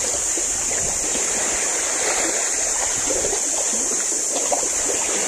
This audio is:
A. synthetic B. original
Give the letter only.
B